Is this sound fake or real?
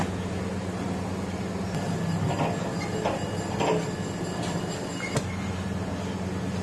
real